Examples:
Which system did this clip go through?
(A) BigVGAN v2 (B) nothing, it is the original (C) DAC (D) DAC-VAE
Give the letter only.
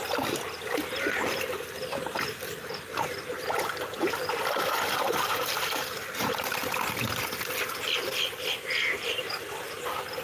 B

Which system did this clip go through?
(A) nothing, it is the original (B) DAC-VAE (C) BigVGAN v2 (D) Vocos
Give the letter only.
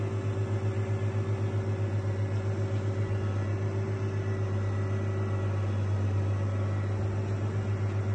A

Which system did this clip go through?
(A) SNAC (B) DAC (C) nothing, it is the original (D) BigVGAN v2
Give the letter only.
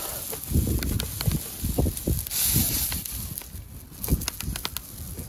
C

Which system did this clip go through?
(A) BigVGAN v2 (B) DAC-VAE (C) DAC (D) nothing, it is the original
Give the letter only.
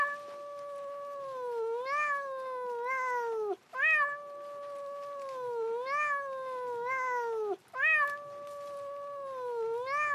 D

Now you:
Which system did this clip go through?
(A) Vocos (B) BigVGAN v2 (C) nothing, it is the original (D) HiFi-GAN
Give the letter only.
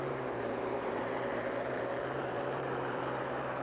B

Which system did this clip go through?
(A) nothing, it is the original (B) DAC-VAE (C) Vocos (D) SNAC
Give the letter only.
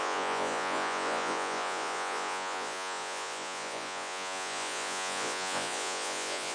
C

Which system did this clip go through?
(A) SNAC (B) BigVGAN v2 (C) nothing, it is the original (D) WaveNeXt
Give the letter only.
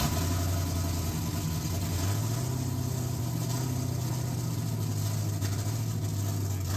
C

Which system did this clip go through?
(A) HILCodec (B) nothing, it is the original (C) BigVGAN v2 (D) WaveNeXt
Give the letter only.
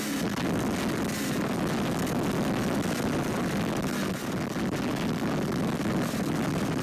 B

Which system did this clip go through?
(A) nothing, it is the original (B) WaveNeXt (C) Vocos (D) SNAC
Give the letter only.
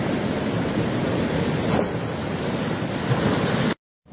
A